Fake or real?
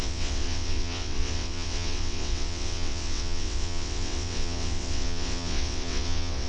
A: fake